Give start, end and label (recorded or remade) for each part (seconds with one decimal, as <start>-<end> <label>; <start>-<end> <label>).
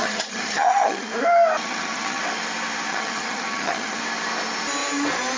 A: 0.0-1.1 remade; 1.1-1.6 recorded; 1.6-2.2 remade; 2.2-2.9 recorded; 2.9-4.0 remade; 4.0-5.4 recorded